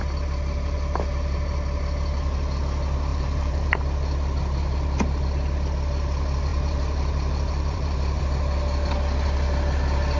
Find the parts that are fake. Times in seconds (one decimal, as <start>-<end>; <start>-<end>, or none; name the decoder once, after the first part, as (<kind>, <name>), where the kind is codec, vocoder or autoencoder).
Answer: 3.1-3.8 (vocoder, BigVGAN v2); 6.5-8.2